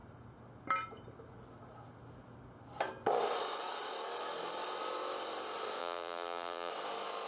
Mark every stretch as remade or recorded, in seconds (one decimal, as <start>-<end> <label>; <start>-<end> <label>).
0.0-5.8 recorded; 5.8-6.7 remade; 6.7-7.3 recorded